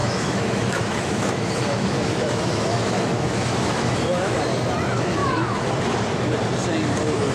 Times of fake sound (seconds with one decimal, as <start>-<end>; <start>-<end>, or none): 0.0-4.4; 5.2-5.7